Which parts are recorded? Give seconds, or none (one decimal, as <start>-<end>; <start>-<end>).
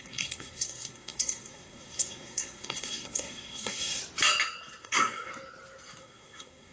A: 4.0-4.8; 5.3-6.0